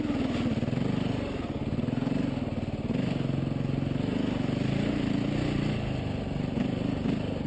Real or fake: real